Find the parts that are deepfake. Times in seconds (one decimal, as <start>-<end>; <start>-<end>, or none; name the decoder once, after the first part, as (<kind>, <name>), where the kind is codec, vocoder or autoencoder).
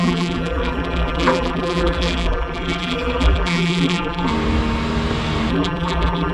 0.0-4.3 (vocoder, BigVGAN v2); 5.5-6.3